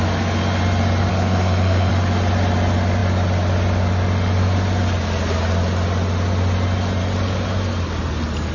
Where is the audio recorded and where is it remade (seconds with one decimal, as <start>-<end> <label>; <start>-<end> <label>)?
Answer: 0.0-1.1 recorded; 1.1-1.9 remade; 1.9-8.5 recorded